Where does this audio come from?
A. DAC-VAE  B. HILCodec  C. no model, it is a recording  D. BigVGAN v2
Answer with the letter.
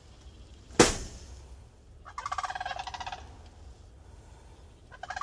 C